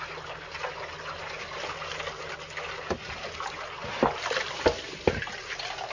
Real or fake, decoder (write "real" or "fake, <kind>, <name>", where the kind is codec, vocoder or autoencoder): real